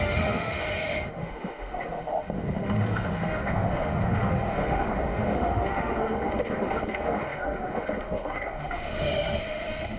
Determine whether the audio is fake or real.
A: fake